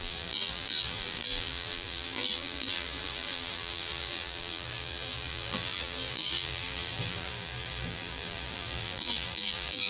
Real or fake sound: fake